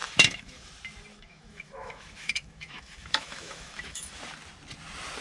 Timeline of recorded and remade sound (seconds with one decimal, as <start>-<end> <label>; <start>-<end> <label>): 0.0-0.7 remade; 0.7-1.1 recorded; 1.1-4.2 remade; 4.2-5.2 recorded